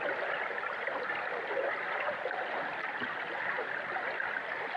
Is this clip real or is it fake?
real